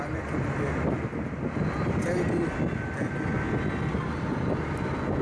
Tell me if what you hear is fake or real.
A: real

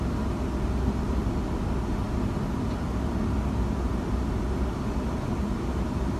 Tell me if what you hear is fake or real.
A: real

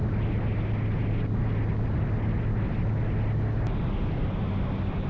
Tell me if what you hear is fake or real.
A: real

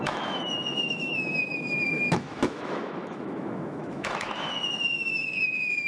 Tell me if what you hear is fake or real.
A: fake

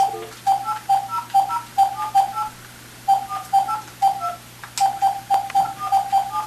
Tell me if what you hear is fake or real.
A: real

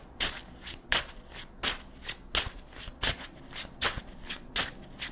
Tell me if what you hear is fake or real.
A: real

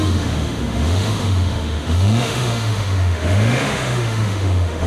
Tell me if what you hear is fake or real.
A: fake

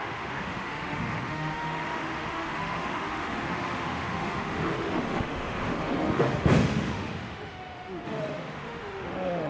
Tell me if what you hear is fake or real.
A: fake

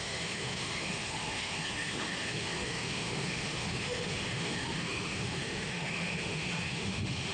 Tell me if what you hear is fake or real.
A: fake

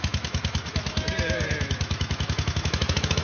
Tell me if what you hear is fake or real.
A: fake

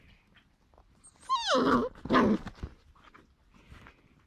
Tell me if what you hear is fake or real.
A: real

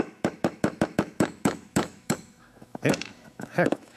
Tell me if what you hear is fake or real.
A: fake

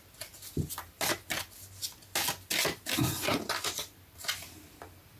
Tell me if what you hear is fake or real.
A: real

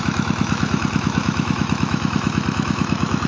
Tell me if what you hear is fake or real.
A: fake